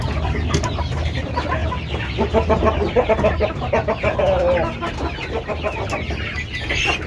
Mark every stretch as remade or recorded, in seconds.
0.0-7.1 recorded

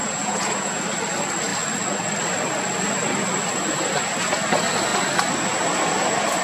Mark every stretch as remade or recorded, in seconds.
0.0-0.8 remade; 0.8-6.4 recorded

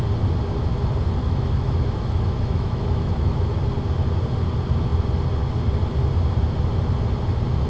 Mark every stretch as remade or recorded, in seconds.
0.0-1.2 recorded; 1.2-3.5 remade; 3.5-7.7 recorded

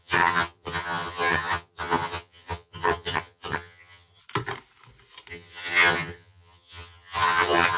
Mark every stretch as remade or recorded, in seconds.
0.0-4.2 remade; 4.2-5.3 recorded; 5.3-7.8 remade

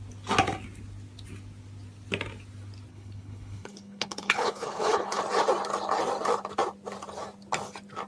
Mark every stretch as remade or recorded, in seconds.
0.0-2.9 recorded; 2.9-5.2 remade; 5.2-8.1 recorded